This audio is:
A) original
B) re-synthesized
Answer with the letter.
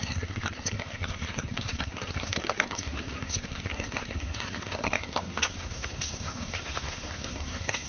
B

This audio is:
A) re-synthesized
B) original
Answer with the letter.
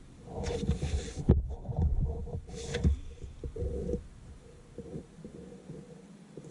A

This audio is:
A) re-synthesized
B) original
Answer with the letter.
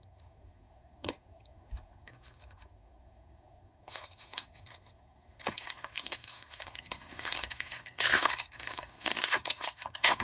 A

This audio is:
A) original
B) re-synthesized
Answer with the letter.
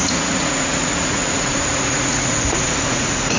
B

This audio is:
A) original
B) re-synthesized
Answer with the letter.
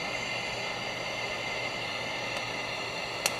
A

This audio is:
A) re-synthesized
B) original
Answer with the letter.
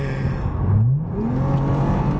B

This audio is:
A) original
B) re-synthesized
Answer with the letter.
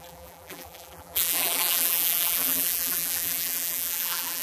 B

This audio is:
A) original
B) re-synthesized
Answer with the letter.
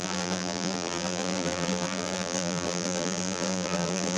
B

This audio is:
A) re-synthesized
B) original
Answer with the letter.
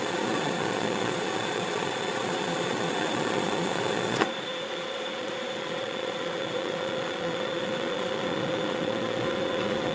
A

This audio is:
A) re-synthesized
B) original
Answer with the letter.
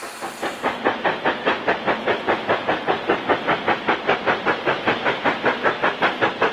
B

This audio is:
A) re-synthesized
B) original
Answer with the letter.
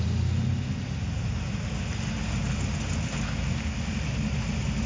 B